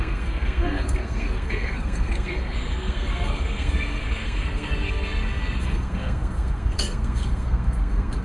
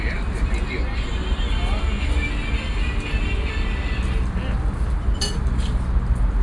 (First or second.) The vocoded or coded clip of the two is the first